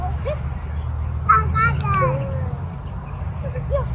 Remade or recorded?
recorded